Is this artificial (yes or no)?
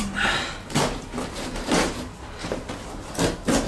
no